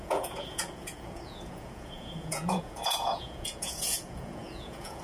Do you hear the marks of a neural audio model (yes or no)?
yes